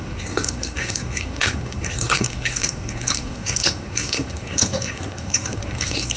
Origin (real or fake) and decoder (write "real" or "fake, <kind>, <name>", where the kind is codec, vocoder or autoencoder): fake, codec, SNAC